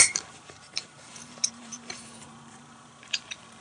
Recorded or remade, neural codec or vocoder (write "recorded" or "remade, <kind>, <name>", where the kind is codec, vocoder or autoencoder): remade, vocoder, BigVGAN v2